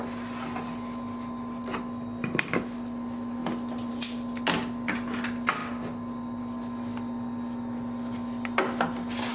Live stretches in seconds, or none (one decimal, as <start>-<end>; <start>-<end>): 0.0-9.3